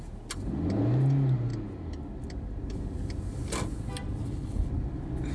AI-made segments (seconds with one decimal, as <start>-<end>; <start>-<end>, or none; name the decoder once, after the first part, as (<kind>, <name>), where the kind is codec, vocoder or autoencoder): 4.2-4.7 (codec, HILCodec)